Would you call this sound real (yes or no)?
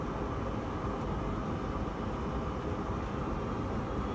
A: yes